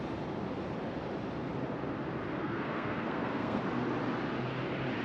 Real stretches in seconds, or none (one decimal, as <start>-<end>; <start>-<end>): 0.0-2.4; 3.6-5.0